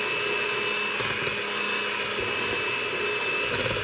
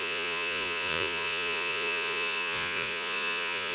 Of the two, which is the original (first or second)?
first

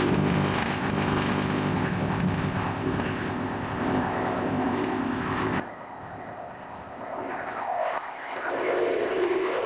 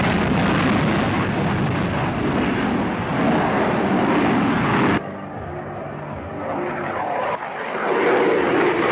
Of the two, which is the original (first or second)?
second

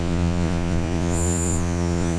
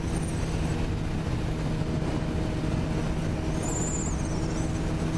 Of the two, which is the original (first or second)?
second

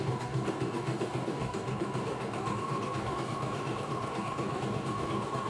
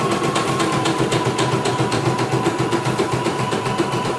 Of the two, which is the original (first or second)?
second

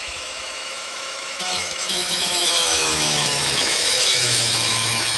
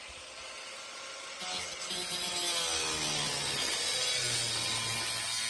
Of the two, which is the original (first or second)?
second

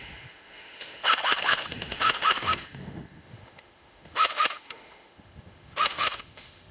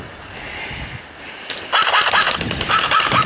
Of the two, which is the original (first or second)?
second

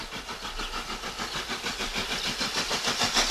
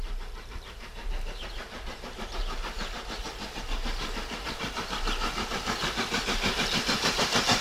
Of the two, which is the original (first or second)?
first